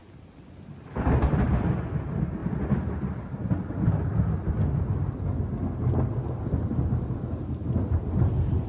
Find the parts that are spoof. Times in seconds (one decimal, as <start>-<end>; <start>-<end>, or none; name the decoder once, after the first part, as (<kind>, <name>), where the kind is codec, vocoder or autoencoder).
none

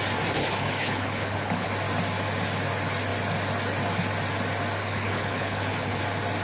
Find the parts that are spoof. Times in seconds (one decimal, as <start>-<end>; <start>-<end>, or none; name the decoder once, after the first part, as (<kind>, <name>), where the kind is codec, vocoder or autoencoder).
0.4-1.7 (codec, HILCodec); 4.8-6.0

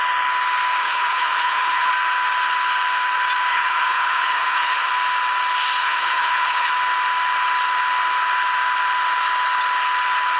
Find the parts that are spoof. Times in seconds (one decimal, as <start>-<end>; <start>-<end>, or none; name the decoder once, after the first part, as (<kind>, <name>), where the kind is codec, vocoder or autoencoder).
0.8-1.9 (codec, HILCodec); 3.5-4.9; 5.8-6.7

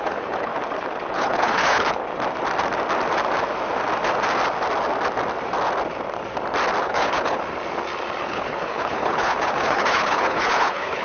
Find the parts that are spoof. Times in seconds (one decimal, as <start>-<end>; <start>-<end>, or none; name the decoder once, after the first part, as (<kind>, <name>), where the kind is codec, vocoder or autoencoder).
0.0-0.5 (codec, HILCodec); 1.1-2.0; 6.8-7.4; 8.2-11.0